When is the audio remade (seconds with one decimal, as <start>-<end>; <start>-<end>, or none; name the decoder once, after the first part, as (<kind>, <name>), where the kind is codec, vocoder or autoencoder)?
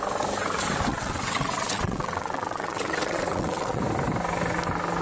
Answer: 0.9-3.8 (vocoder, WaveNeXt)